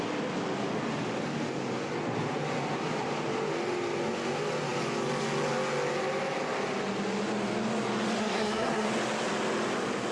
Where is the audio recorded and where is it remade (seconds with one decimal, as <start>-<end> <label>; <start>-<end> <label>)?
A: 0.0-8.2 recorded; 8.2-8.9 remade; 8.9-10.1 recorded